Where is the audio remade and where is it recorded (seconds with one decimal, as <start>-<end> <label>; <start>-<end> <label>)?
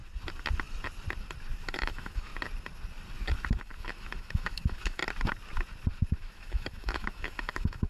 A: 0.0-1.7 recorded; 1.7-2.3 remade; 2.3-3.6 recorded; 3.6-5.0 remade; 5.0-6.1 recorded; 6.1-7.9 remade